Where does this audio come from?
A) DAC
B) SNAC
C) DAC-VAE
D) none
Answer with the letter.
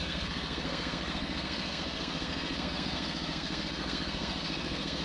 B